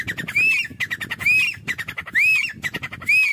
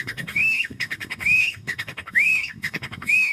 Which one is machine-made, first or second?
second